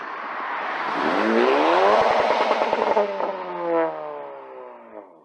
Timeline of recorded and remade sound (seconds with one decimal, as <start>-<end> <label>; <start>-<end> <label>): 0.0-5.2 recorded